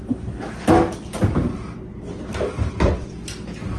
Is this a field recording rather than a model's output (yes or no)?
yes